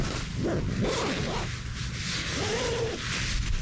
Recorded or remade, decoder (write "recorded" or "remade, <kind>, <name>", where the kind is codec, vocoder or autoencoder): recorded